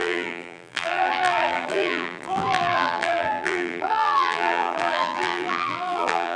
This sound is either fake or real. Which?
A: fake